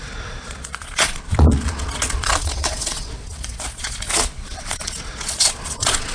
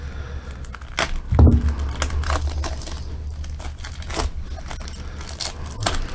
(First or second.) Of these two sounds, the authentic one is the second